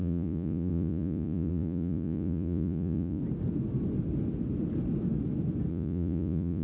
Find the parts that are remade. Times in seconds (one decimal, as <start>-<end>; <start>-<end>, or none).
0.0-3.2; 5.7-6.6